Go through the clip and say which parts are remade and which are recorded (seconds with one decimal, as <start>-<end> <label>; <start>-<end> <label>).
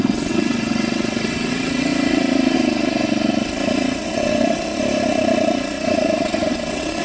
0.0-1.9 remade; 1.9-4.0 recorded; 4.0-4.7 remade; 4.7-6.5 recorded; 6.5-7.0 remade